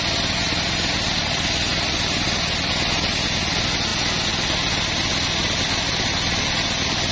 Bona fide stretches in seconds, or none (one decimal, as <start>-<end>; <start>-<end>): 0.0-7.1